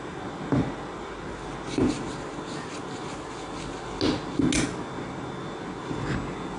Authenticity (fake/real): real